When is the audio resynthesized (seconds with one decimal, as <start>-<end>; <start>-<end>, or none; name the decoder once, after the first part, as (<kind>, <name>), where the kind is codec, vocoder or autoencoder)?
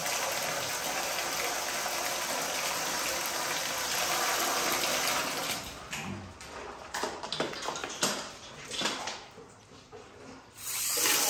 7.8-8.6 (vocoder, BigVGAN v2)